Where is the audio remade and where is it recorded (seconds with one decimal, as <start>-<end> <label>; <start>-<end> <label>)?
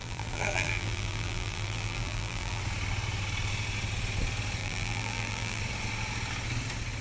0.0-2.6 remade; 2.6-4.6 recorded; 4.6-5.6 remade; 5.6-7.0 recorded